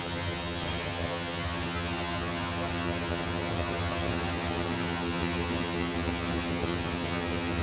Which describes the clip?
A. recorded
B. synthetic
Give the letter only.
B